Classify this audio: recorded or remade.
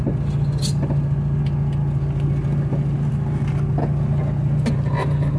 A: recorded